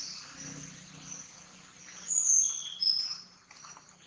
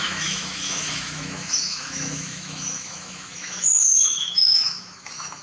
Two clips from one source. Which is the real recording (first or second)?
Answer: first